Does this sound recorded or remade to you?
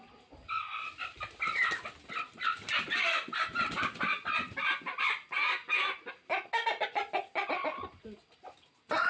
recorded